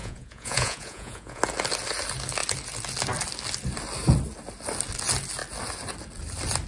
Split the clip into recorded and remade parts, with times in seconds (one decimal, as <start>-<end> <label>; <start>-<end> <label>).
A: 0.0-1.4 remade; 1.4-6.7 recorded